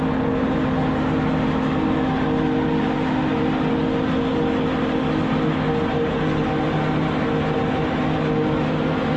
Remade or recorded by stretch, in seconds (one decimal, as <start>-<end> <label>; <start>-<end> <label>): 0.0-9.2 recorded